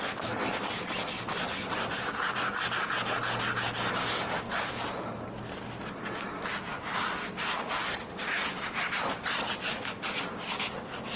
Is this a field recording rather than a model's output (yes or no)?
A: yes